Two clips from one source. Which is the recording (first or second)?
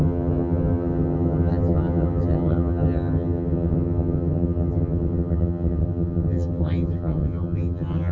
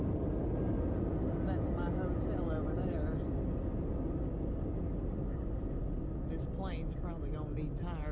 second